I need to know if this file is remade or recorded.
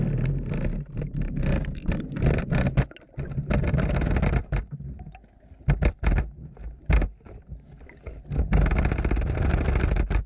recorded